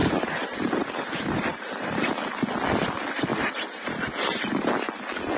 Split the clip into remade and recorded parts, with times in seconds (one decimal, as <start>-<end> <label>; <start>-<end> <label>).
0.0-2.1 remade; 2.1-3.3 recorded; 3.3-4.9 remade; 4.9-5.4 recorded